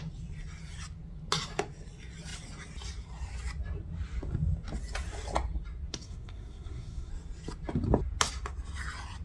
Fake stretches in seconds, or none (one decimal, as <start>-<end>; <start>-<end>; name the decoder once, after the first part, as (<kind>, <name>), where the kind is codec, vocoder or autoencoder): 5.9-7.1 (codec, SNAC)